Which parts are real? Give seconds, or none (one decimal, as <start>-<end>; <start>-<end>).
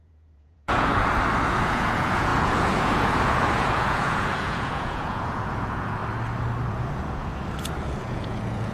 0.9-1.5; 6.0-6.7; 7.3-8.0